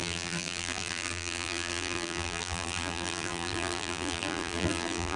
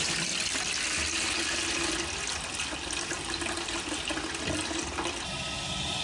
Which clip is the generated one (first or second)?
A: first